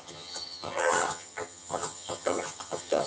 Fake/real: fake